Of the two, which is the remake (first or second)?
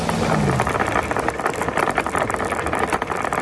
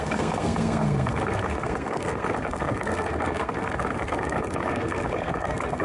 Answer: second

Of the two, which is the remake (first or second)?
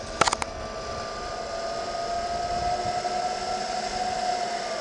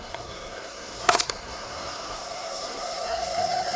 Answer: second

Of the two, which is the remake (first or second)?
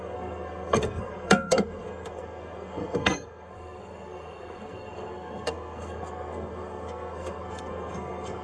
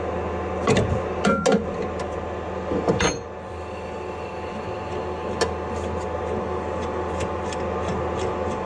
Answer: first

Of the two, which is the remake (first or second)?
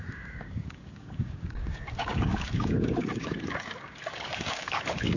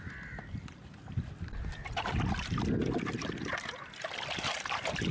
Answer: first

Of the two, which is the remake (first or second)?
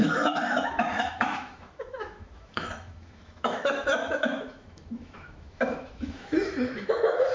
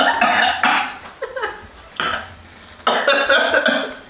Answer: first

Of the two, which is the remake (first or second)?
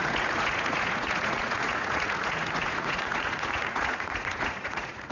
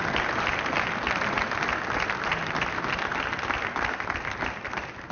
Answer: first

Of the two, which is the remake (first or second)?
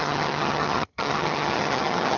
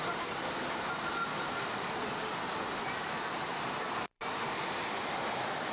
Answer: first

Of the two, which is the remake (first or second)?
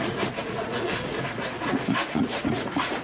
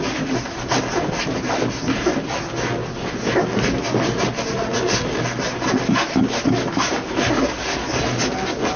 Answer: first